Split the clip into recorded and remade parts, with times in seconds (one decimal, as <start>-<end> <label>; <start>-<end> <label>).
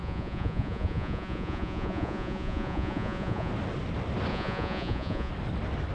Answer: 0.0-3.5 remade; 3.5-4.3 recorded; 4.3-5.3 remade; 5.3-5.9 recorded